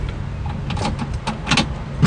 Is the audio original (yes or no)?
yes